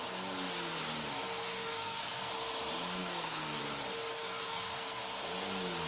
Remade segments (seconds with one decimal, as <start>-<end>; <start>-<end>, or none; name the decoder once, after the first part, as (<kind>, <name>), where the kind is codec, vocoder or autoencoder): 1.5-2.3 (codec, SNAC); 3.0-3.6; 4.1-5.0